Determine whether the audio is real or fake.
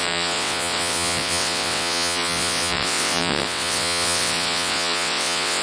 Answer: fake